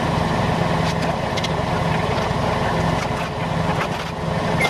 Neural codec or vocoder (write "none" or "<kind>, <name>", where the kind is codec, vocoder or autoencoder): none